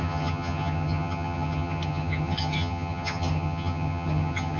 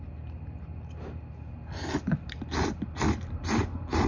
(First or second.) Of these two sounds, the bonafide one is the second